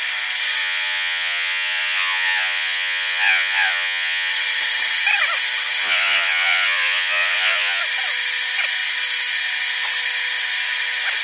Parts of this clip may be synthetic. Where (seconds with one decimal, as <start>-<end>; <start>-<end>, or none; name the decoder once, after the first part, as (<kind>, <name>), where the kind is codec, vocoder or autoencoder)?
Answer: 0.6-4.3 (vocoder, Vocos); 5.8-7.8